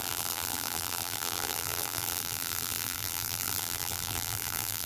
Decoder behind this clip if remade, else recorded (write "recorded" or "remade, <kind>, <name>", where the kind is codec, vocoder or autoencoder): remade, vocoder, BigVGAN v2